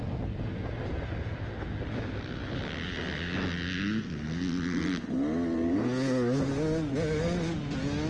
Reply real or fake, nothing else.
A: real